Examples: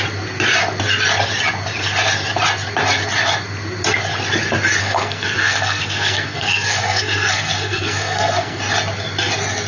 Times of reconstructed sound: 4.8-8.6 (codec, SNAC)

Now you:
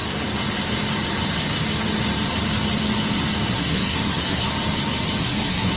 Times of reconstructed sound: 3.5-4.5 (codec, SNAC); 5.2-5.8